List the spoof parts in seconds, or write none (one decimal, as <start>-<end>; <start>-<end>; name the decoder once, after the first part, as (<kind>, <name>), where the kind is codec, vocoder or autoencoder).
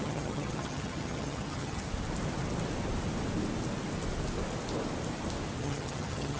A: 0.0-1.8 (vocoder, HiFi-GAN); 5.6-6.4